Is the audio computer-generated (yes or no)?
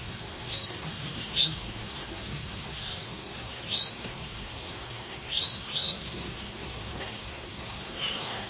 yes